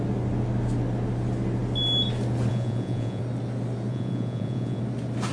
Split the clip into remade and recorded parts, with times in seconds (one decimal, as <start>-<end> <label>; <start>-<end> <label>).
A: 0.0-2.5 recorded; 2.5-3.2 remade; 3.2-3.9 recorded; 3.9-4.8 remade; 4.8-5.3 recorded